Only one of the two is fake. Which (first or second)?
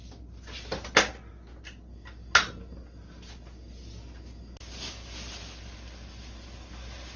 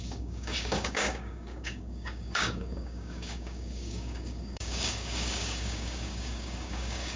second